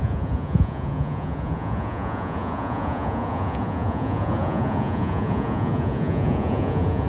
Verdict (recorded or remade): remade